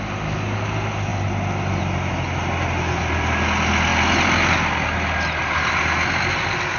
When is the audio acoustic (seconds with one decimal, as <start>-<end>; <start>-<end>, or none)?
0.0-6.8